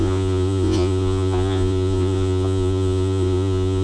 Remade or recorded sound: remade